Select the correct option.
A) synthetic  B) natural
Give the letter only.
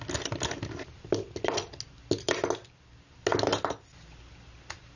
B